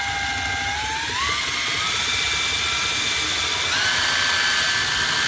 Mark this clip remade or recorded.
recorded